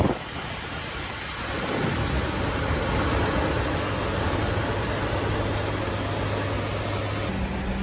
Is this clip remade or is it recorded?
recorded